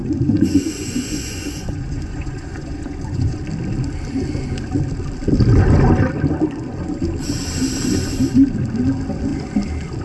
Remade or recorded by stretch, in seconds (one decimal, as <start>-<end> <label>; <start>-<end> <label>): 0.0-3.4 remade; 3.4-10.0 recorded

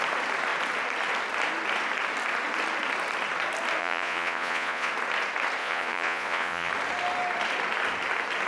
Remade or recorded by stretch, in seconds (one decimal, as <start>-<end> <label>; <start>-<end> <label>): 0.0-3.8 recorded; 3.8-4.9 remade; 4.9-5.6 recorded; 5.6-6.7 remade; 6.7-8.5 recorded

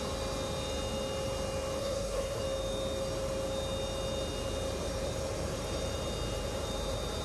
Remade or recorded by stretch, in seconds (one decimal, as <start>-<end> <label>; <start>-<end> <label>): 0.0-1.8 recorded; 1.8-2.4 remade; 2.4-7.2 recorded

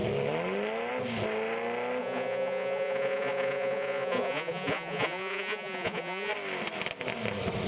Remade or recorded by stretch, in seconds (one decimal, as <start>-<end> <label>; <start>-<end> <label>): 0.0-2.0 recorded; 2.0-6.3 remade; 6.3-7.7 recorded

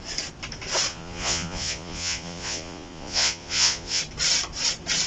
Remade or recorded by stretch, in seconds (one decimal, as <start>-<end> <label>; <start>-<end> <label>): 0.0-0.9 recorded; 0.9-4.0 remade; 4.0-5.1 recorded

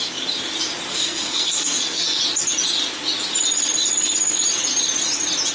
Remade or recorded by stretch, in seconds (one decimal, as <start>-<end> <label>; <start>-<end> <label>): 0.0-0.9 recorded; 0.9-2.2 remade; 2.2-5.5 recorded

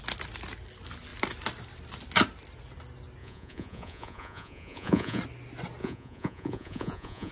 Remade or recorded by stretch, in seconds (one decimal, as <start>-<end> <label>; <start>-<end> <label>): 0.0-3.2 recorded; 3.2-5.2 remade; 5.2-5.8 recorded; 5.8-7.3 remade